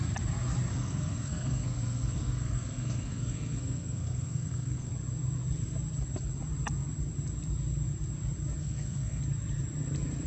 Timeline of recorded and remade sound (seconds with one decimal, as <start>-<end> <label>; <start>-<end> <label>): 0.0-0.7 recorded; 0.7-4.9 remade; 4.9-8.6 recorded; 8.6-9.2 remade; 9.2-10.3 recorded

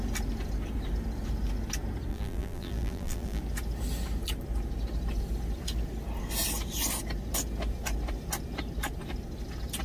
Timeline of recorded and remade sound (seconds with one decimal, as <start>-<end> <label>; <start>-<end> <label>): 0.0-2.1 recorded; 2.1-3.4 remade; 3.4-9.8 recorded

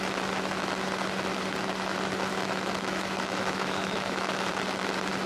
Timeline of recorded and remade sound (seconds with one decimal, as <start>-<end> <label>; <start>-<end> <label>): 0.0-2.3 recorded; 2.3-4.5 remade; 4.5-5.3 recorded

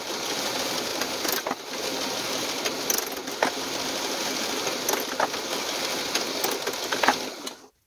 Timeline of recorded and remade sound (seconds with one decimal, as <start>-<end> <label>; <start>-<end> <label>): 0.0-0.9 recorded; 0.9-1.7 remade; 1.7-7.9 recorded

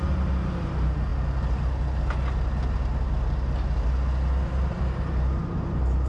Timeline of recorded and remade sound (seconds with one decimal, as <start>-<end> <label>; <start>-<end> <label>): 0.0-6.1 recorded

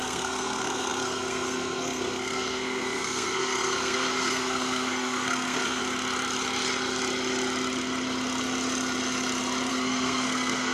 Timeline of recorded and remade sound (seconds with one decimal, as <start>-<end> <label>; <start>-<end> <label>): 0.0-5.8 remade; 5.8-9.7 recorded; 9.7-10.7 remade